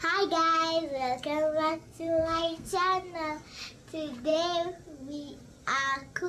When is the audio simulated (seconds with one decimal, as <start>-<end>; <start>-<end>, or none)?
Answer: 1.7-2.7